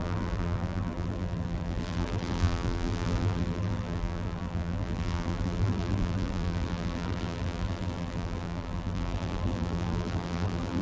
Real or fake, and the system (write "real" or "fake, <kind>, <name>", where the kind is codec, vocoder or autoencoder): fake, vocoder, BigVGAN v2